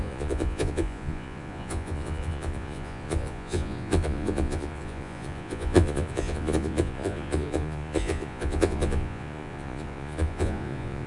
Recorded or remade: remade